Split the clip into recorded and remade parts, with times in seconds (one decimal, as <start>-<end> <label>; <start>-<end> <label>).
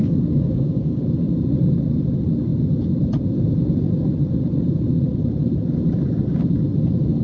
0.0-1.0 remade; 1.0-7.2 recorded